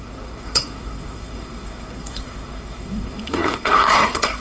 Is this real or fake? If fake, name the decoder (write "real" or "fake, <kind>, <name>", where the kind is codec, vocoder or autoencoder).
fake, codec, SNAC